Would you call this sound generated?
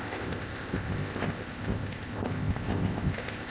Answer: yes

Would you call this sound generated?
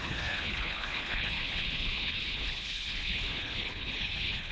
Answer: yes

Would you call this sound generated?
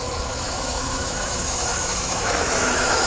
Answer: yes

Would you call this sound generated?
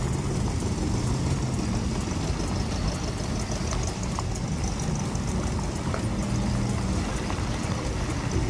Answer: no